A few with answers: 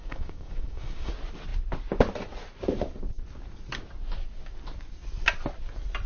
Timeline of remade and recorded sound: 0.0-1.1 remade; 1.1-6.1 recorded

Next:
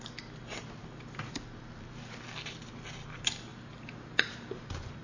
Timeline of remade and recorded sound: 0.0-0.8 recorded; 0.8-1.3 remade; 1.3-3.5 recorded; 3.5-4.5 remade; 4.5-5.0 recorded

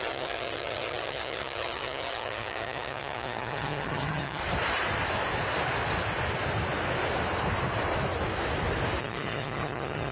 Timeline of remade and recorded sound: 0.0-4.4 remade; 4.4-9.0 recorded; 9.0-10.1 remade

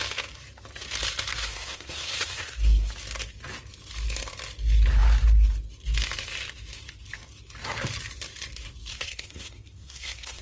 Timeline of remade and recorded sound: 0.0-1.3 recorded; 1.3-2.9 remade; 2.9-8.9 recorded; 8.9-10.4 remade

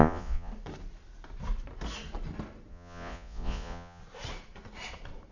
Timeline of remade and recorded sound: 0.0-0.5 remade; 0.5-2.7 recorded; 2.7-4.0 remade; 4.0-5.3 recorded

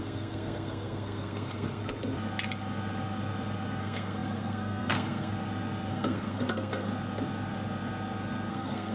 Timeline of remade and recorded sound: 0.0-1.8 remade; 1.8-3.8 recorded; 3.8-5.3 remade; 5.3-5.9 recorded; 5.9-6.9 remade; 6.9-8.5 recorded; 8.5-8.9 remade

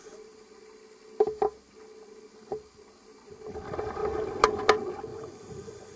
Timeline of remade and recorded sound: 0.0-5.1 recorded; 5.1-6.0 remade